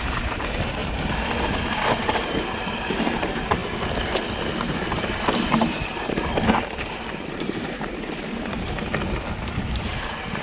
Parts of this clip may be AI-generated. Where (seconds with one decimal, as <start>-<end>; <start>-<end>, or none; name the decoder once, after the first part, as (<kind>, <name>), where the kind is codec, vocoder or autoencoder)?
0.0-0.8 (vocoder, BigVGAN v2); 2.0-3.6; 4.6-8.9; 9.6-10.4